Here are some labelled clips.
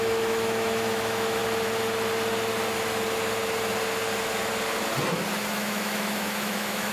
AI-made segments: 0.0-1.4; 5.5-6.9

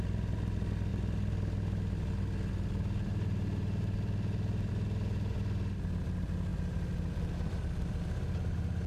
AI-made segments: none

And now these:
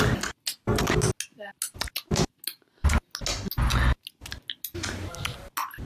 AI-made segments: none

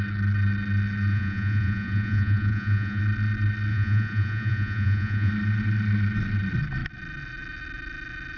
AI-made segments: 1.1-3.0; 3.7-5.3

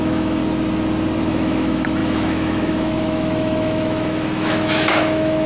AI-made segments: 0.0-0.4; 1.2-5.5

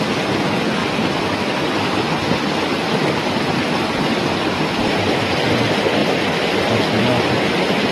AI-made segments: none